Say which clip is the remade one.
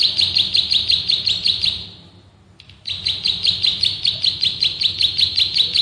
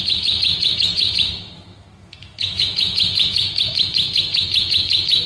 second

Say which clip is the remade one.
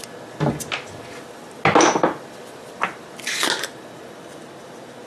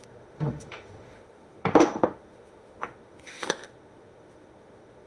second